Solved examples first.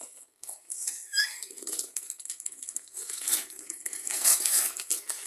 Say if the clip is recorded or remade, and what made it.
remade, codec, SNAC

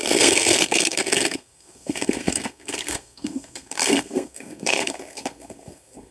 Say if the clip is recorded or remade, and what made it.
remade, codec, SNAC